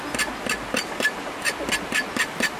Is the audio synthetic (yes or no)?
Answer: no